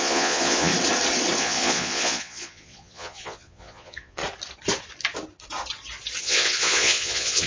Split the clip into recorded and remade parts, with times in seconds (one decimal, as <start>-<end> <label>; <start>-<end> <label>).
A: 0.0-0.7 remade; 0.7-1.4 recorded; 1.4-4.2 remade; 4.2-6.2 recorded; 6.2-7.5 remade